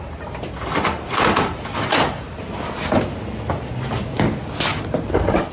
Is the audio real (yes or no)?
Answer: yes